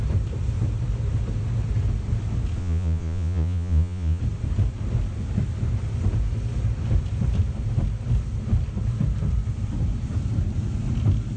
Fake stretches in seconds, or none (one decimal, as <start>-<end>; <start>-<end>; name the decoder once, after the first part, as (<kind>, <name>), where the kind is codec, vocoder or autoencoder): 2.6-4.2 (vocoder, Vocos)